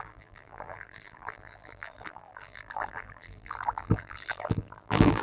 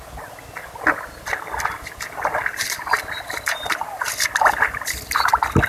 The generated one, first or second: first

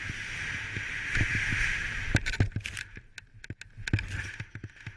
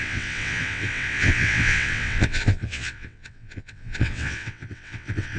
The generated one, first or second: second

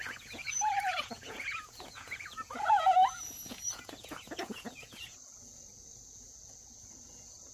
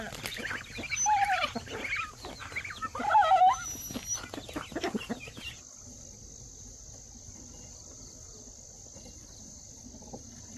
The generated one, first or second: first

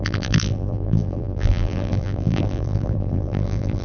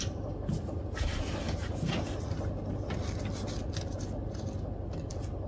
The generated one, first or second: first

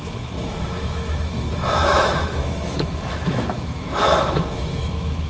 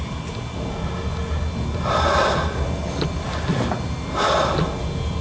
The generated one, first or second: first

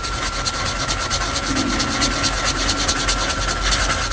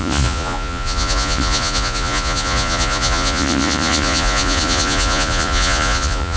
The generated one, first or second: second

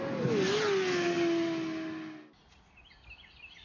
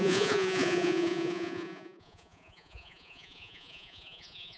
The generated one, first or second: second